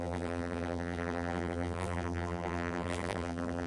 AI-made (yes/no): yes